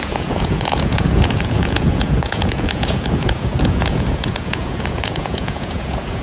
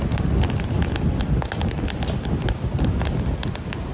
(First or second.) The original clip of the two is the second